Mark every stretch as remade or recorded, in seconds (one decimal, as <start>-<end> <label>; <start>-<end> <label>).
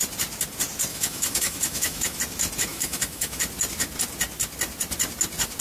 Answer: 0.0-0.9 recorded; 0.9-2.2 remade; 2.2-2.7 recorded; 2.7-3.4 remade; 3.4-5.6 recorded